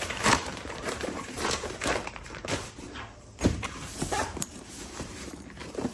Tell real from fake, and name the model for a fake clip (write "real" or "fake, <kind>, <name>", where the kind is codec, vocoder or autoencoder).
fake, vocoder, BigVGAN v2